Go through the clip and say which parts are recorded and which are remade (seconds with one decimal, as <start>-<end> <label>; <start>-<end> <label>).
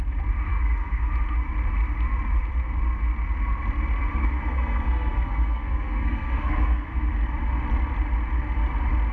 0.0-0.5 recorded; 0.5-1.1 remade; 1.1-4.2 recorded; 4.2-7.1 remade; 7.1-9.1 recorded